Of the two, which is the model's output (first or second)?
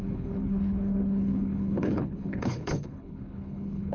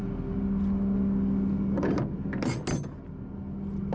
first